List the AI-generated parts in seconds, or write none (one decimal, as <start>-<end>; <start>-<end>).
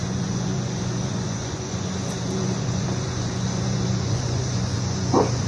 0.0-5.5